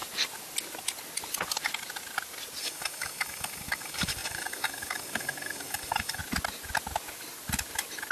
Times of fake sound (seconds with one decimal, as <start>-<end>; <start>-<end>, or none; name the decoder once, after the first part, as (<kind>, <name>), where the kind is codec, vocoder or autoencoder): 2.6-6.2 (codec, DAC)